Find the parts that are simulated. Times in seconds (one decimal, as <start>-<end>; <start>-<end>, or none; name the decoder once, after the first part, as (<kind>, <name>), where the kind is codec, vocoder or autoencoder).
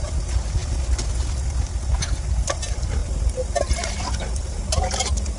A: none